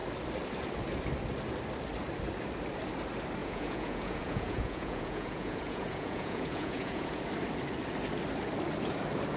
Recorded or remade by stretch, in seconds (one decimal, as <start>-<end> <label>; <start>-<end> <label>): 0.0-3.4 recorded; 3.4-7.2 remade; 7.2-9.4 recorded